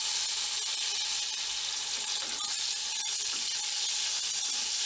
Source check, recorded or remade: recorded